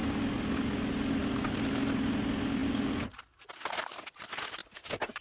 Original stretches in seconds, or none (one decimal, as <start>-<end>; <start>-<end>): 0.0-5.2